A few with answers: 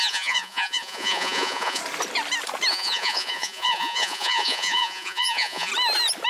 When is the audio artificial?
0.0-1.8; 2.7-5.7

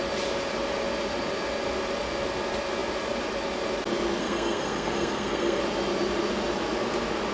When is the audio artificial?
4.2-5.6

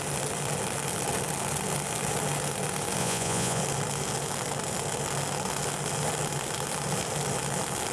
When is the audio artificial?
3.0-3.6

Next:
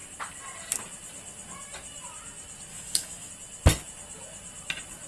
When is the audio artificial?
2.7-3.3

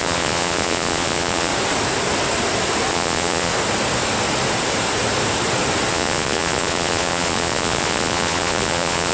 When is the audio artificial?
0.0-1.5; 2.9-3.5; 5.9-9.1

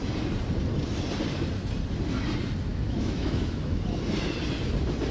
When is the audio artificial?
2.7-3.8

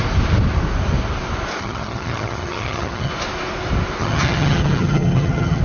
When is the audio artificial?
1.6-3.1; 4.0-5.6

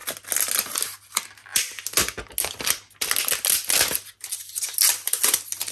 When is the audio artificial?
none